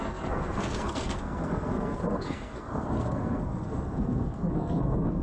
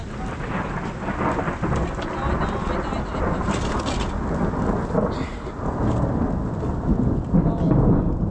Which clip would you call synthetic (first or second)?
first